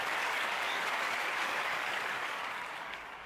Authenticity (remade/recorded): remade